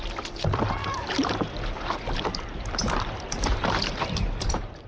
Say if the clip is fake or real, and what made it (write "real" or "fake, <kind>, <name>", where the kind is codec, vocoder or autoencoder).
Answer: fake, vocoder, BigVGAN v2